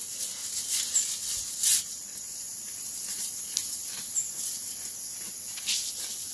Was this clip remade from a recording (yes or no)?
no